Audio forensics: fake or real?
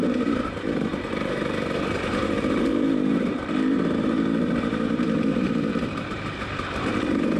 fake